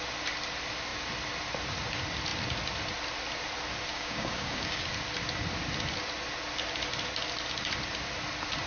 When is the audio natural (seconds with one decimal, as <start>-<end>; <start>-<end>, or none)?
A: 0.0-3.9; 4.8-8.7